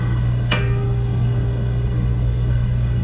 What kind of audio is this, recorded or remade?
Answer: remade